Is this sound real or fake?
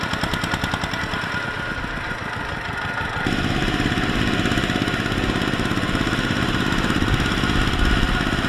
real